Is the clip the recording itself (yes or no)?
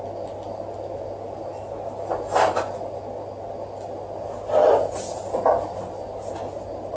yes